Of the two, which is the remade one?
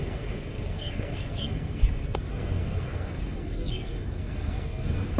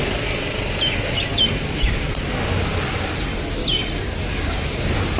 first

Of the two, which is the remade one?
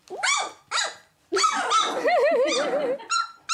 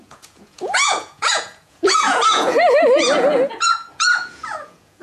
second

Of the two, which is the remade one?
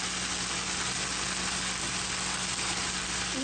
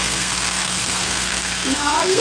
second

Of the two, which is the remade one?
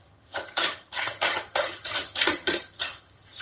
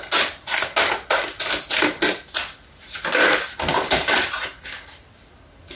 first